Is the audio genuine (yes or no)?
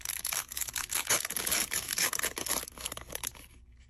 no